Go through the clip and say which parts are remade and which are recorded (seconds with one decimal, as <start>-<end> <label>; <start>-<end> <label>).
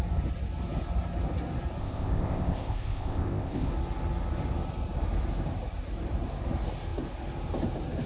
0.0-1.8 recorded; 1.8-3.7 remade; 3.7-8.1 recorded